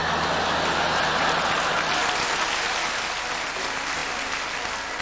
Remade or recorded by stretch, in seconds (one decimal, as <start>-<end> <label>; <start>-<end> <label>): 0.0-5.0 recorded